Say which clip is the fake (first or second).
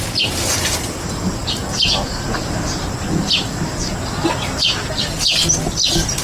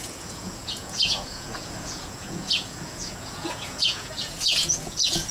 second